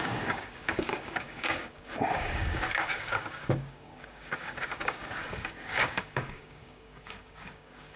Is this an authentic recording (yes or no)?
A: no